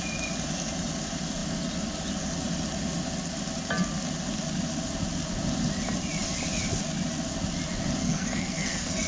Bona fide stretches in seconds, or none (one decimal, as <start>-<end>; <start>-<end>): 0.0-8.0